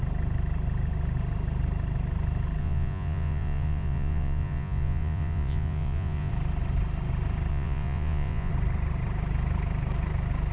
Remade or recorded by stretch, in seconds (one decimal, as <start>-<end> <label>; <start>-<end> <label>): 0.0-2.6 recorded; 2.6-6.3 remade; 6.3-7.5 recorded; 7.5-8.5 remade; 8.5-10.5 recorded